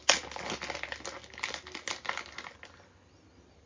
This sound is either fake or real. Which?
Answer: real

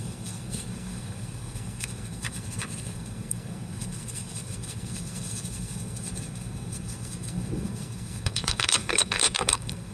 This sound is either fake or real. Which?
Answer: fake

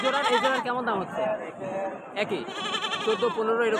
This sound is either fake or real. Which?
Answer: real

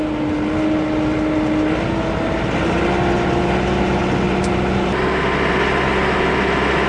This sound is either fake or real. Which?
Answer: real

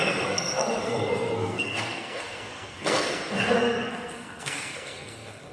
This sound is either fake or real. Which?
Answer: fake